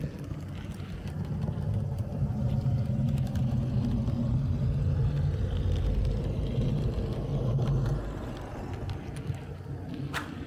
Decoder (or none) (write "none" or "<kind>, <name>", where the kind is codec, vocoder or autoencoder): none